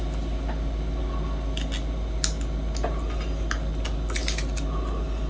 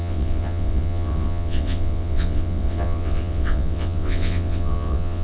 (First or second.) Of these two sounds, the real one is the first